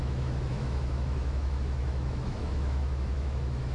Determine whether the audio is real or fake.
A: fake